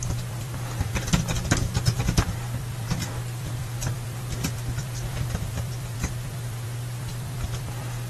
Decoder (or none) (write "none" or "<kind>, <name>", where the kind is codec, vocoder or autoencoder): vocoder, BigVGAN v2